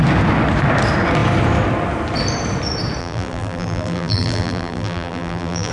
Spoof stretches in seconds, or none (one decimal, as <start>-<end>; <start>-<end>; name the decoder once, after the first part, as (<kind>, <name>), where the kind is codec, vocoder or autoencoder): 3.0-5.7 (vocoder, BigVGAN v2)